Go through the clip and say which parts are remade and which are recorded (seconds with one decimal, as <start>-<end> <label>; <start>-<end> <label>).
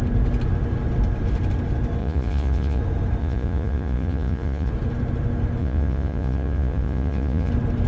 0.0-2.0 recorded; 2.0-2.8 remade; 2.8-3.2 recorded; 3.2-4.7 remade; 4.7-5.6 recorded; 5.6-7.5 remade; 7.5-7.9 recorded